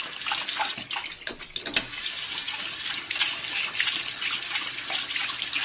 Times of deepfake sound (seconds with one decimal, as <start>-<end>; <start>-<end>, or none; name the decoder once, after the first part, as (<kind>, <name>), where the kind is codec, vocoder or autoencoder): none